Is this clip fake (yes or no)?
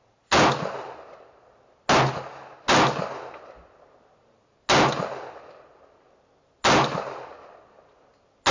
no